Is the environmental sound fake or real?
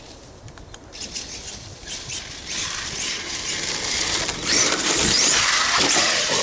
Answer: real